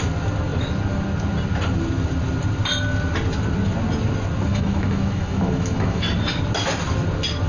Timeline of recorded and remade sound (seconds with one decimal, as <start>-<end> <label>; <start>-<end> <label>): 0.0-4.5 recorded; 4.5-6.0 remade; 6.0-7.5 recorded